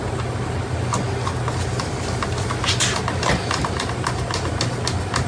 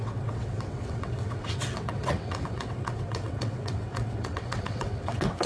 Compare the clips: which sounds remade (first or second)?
second